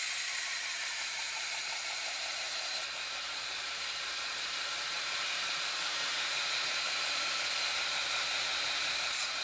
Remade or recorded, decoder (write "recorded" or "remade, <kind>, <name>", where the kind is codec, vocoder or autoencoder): remade, vocoder, BigVGAN v2